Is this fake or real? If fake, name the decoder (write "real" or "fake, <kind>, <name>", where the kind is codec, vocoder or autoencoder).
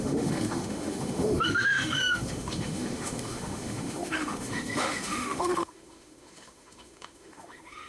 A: fake, autoencoder, DAC-VAE